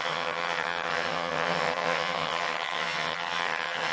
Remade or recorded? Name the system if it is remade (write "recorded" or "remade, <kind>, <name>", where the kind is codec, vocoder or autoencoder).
remade, vocoder, HiFi-GAN